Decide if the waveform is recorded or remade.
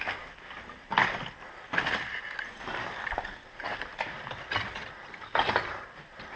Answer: recorded